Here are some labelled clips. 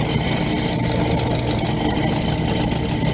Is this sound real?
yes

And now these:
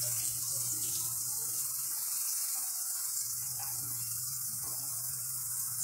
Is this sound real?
no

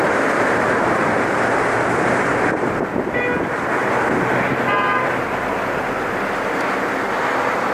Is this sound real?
yes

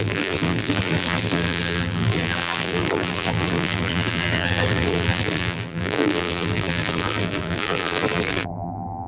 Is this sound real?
no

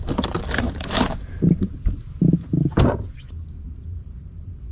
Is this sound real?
no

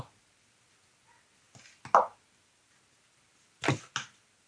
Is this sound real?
yes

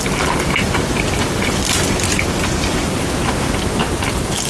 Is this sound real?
yes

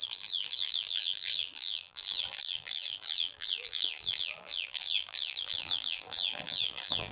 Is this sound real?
no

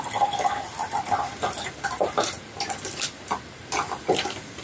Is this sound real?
yes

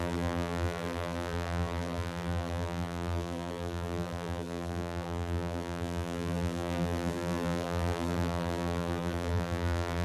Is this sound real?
no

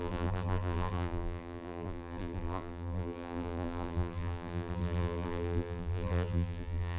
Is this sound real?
no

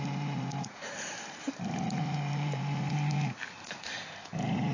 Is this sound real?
no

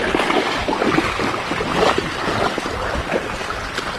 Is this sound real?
yes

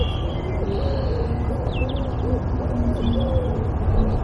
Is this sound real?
yes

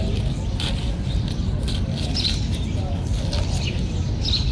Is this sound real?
yes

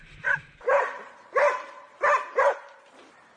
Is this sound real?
no